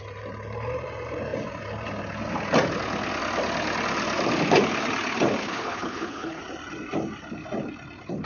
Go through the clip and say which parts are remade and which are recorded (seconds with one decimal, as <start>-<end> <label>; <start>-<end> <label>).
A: 0.0-5.4 recorded; 5.4-6.4 remade; 6.4-8.3 recorded